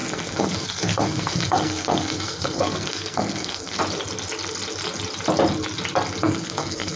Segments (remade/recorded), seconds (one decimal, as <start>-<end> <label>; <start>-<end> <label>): 0.0-3.8 remade; 3.8-6.2 recorded; 6.2-7.0 remade